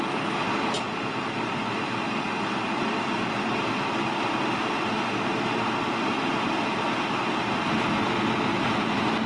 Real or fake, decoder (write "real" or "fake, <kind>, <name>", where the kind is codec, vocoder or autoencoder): real